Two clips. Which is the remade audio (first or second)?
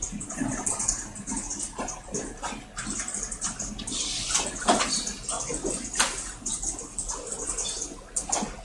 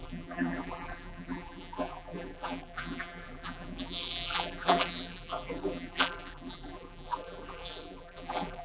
second